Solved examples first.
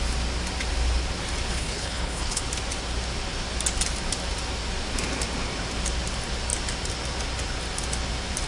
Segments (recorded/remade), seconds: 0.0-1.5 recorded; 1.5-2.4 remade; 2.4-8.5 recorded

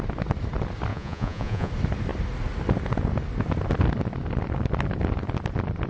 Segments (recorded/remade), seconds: 0.0-0.9 recorded; 0.9-1.7 remade; 1.7-5.9 recorded

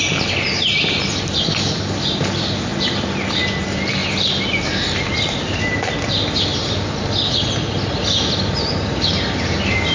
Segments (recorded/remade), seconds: 0.0-9.9 recorded

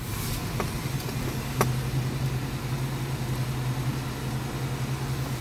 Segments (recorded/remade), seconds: 0.0-5.4 recorded

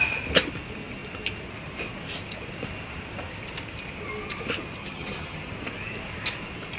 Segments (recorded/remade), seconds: 0.0-4.8 recorded; 4.8-5.5 remade; 5.5-6.8 recorded

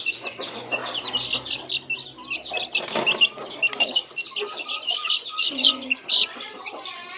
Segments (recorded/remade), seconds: 0.0-0.8 remade; 0.8-4.6 recorded; 4.6-7.2 remade

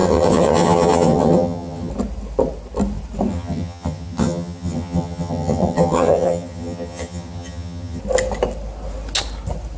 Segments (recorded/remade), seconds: 0.0-1.9 remade; 1.9-3.3 recorded; 3.3-8.0 remade; 8.0-9.8 recorded